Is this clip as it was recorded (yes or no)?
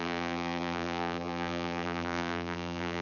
no